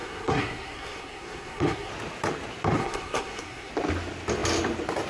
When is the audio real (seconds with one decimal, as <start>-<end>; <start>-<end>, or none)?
1.9-2.8; 3.7-5.1